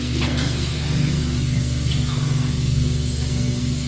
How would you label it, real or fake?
fake